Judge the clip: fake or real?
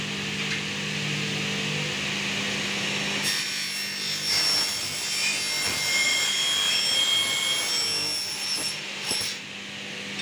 real